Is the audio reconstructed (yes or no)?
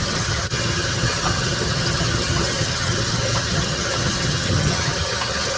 yes